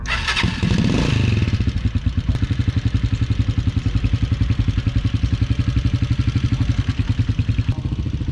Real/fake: real